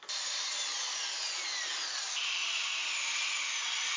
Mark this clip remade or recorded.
recorded